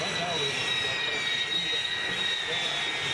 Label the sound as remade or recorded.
recorded